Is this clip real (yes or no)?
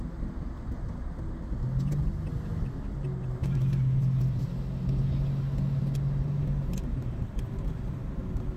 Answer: yes